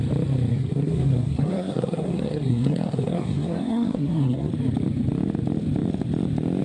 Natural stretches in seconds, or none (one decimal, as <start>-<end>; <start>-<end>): 0.0-0.5; 4.5-6.6